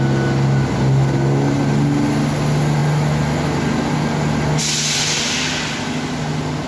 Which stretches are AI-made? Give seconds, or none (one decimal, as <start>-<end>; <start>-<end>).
none